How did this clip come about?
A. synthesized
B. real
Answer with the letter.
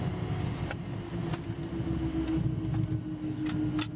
B